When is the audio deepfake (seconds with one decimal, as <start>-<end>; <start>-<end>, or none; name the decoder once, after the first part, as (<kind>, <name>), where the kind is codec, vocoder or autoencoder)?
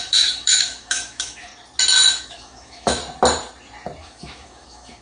0.0-1.5 (autoencoder, DAC-VAE); 2.1-3.0; 4.0-5.0